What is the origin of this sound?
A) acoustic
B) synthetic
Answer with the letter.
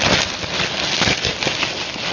A